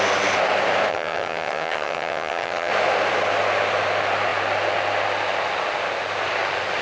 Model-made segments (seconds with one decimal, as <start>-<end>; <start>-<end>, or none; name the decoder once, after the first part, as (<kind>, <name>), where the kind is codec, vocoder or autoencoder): 0.9-2.7 (vocoder, HiFi-GAN)